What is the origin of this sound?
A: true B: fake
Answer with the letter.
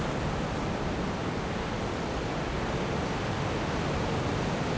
A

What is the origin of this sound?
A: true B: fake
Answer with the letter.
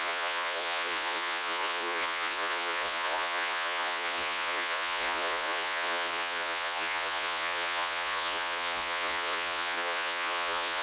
B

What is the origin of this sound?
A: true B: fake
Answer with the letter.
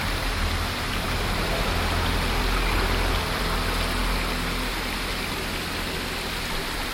A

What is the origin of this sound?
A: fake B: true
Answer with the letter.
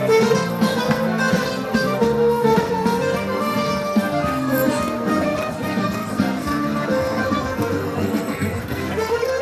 A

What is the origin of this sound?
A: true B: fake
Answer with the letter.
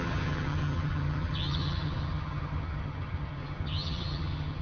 B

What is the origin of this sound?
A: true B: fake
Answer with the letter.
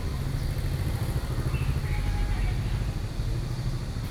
A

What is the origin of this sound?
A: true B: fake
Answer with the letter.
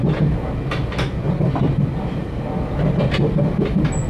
A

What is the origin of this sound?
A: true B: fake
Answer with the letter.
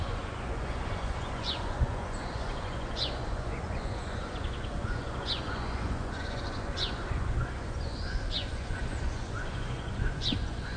B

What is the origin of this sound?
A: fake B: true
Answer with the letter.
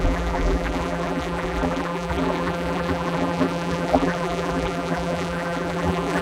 A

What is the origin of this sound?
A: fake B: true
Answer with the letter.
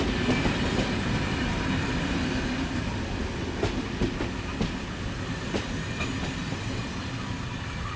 B